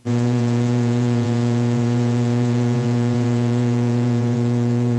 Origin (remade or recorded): remade